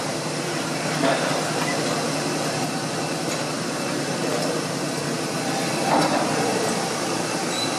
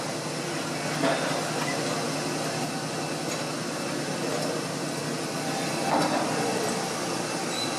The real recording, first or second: second